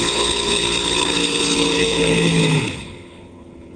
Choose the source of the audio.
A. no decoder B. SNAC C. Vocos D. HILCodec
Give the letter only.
D